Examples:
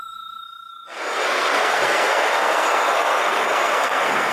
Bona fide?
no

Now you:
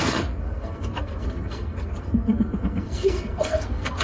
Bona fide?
no